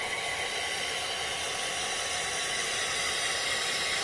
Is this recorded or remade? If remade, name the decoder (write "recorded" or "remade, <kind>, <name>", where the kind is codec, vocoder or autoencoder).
recorded